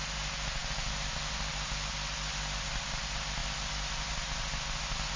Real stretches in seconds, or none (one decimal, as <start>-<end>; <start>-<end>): 0.0-5.2